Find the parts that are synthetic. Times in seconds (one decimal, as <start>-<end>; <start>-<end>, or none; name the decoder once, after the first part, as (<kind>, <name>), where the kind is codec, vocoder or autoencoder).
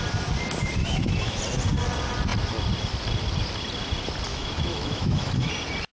0.8-1.4 (autoencoder, DAC-VAE); 4.3-5.5